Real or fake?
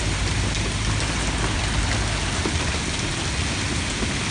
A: real